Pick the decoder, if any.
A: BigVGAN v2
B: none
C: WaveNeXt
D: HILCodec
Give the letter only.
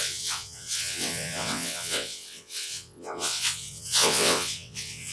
C